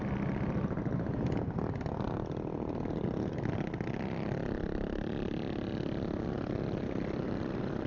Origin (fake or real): real